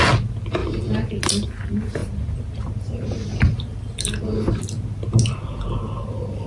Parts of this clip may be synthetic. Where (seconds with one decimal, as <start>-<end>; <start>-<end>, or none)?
none

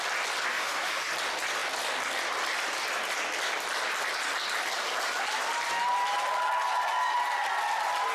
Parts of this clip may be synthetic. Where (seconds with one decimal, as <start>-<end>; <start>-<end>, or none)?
0.5-1.1